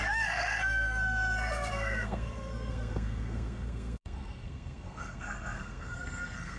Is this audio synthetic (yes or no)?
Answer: yes